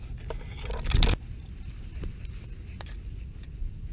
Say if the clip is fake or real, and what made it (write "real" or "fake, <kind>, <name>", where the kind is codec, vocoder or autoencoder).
real